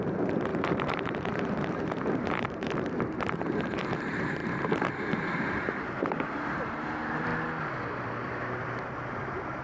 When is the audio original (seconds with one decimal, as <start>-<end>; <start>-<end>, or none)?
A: 7.3-8.0